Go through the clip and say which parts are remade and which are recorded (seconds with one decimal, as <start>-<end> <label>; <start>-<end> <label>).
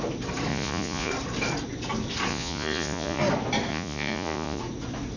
0.0-0.5 recorded; 0.5-1.1 remade; 1.1-2.3 recorded; 2.3-3.2 remade; 3.2-3.7 recorded; 3.7-4.6 remade; 4.6-5.2 recorded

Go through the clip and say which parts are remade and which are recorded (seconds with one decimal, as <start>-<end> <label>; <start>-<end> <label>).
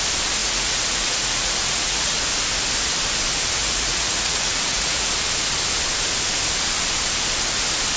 0.0-0.4 recorded; 0.4-2.2 remade; 2.2-3.6 recorded; 3.6-5.1 remade; 5.1-8.0 recorded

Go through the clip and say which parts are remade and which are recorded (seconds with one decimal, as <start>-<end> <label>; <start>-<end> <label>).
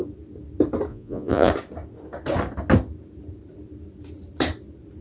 0.0-0.9 recorded; 0.9-1.5 remade; 1.5-5.0 recorded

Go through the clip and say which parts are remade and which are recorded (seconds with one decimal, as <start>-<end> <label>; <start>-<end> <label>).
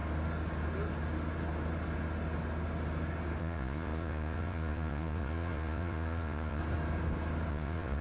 0.0-3.4 recorded; 3.4-6.6 remade; 6.6-7.5 recorded; 7.5-8.0 remade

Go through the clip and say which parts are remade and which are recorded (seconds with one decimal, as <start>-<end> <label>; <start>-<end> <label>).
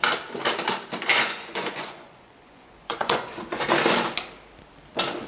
0.0-1.1 recorded; 1.1-3.6 remade; 3.6-5.3 recorded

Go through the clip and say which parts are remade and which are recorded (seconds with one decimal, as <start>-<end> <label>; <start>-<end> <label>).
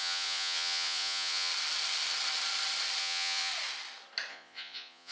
0.0-1.5 remade; 1.5-3.0 recorded; 3.0-3.5 remade; 3.5-4.3 recorded; 4.3-5.1 remade